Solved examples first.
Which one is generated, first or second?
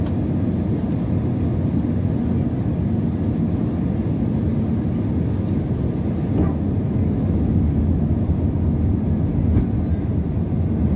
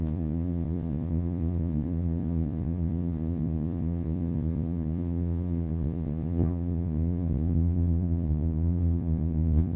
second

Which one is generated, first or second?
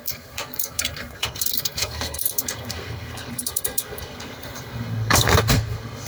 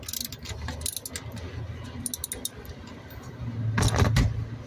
first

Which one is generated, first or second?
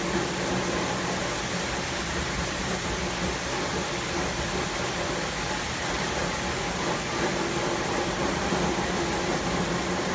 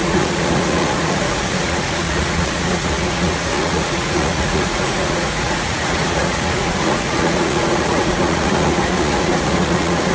second